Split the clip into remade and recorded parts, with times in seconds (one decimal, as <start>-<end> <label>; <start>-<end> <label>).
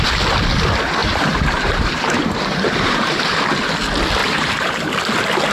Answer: 0.0-1.0 recorded; 1.0-3.4 remade; 3.4-4.2 recorded; 4.2-4.9 remade; 4.9-5.5 recorded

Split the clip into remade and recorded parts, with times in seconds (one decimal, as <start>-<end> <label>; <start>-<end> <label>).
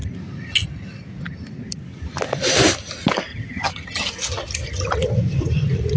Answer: 0.0-3.3 recorded; 3.3-4.1 remade; 4.1-6.0 recorded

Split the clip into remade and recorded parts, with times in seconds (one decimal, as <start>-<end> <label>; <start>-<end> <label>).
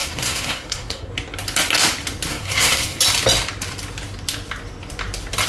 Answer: 0.0-1.1 remade; 1.1-2.3 recorded; 2.3-3.0 remade; 3.0-5.5 recorded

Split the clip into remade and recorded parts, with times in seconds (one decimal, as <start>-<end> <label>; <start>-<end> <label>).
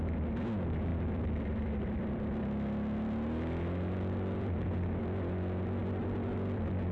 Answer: 0.0-0.9 recorded; 0.9-5.0 remade; 5.0-5.8 recorded; 5.8-6.9 remade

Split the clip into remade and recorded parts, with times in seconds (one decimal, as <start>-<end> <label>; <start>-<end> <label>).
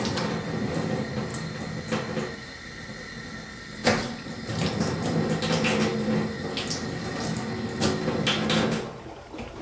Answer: 0.0-9.6 recorded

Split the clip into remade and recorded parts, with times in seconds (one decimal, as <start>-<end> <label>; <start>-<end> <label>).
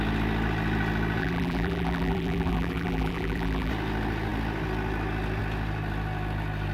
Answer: 0.0-1.2 recorded; 1.2-3.7 remade; 3.7-6.7 recorded